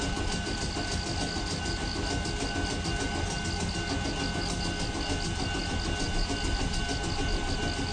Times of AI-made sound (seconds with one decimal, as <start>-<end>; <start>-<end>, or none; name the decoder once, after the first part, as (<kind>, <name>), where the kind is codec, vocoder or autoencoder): none